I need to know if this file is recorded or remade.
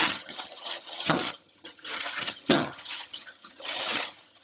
remade